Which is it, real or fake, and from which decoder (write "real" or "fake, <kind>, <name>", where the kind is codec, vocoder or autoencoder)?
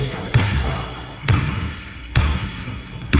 fake, codec, SNAC